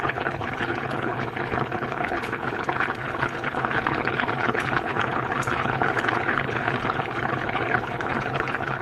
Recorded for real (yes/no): no